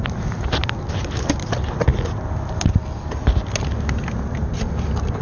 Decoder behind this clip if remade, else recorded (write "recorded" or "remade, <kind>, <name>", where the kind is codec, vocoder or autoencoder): recorded